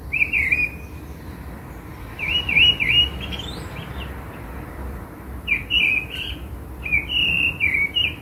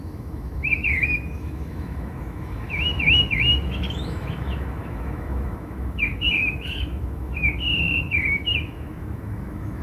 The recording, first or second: first